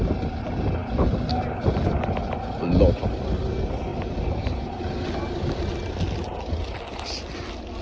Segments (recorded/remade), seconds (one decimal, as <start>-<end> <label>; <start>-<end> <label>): 0.0-7.8 recorded

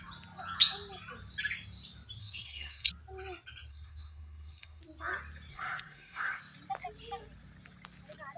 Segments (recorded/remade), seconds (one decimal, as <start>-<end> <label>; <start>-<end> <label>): 0.0-2.2 recorded; 2.2-2.9 remade; 2.9-3.7 recorded; 3.7-4.8 remade; 4.8-5.5 recorded; 5.5-6.4 remade; 6.4-8.4 recorded